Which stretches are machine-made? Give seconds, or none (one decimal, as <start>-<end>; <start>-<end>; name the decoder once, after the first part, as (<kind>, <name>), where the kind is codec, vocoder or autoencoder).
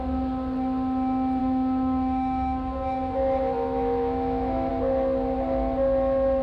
1.4-4.7 (autoencoder, DAC-VAE)